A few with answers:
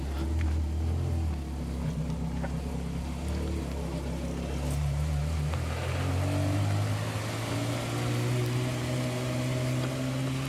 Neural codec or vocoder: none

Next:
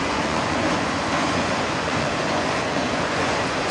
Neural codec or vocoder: vocoder, Vocos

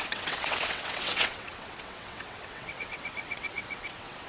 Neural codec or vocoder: vocoder, WaveNeXt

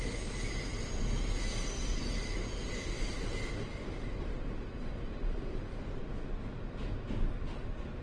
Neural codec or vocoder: none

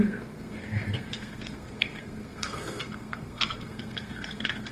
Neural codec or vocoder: codec, SNAC